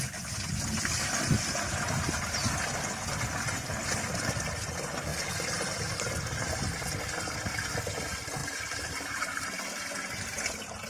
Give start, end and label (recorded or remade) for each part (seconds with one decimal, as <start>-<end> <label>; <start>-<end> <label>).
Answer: 0.0-8.4 recorded; 8.4-10.9 remade